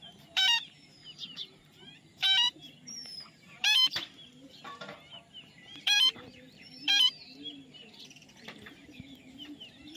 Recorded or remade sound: remade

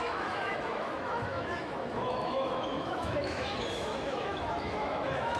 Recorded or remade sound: remade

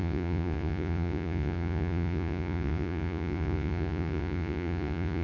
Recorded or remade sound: remade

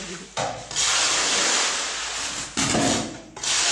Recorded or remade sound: recorded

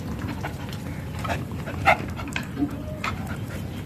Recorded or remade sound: remade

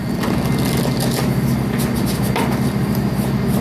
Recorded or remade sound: recorded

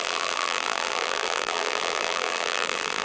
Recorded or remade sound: remade